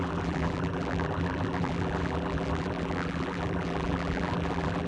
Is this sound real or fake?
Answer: fake